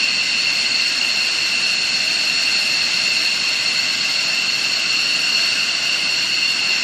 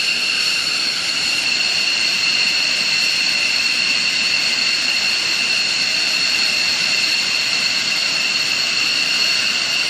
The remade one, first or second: second